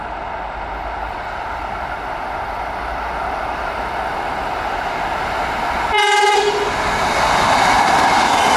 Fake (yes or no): no